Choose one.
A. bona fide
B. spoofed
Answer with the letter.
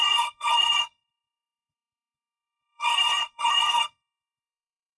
B